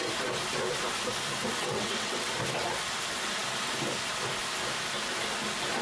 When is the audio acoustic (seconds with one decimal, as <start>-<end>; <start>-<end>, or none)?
0.0-1.6; 2.3-5.8